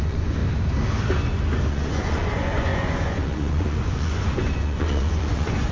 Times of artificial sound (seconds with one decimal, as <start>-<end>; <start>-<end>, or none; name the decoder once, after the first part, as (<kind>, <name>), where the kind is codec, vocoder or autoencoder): 0.0-0.4 (vocoder, Vocos); 1.7-5.7